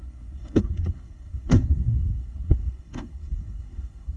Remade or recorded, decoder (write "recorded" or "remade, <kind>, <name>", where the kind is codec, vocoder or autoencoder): remade, codec, SNAC